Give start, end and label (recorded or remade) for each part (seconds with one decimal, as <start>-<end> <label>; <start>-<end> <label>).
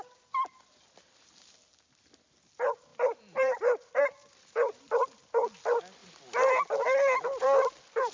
0.0-2.9 recorded; 2.9-4.0 remade; 4.0-6.0 recorded; 6.0-6.6 remade; 6.6-8.1 recorded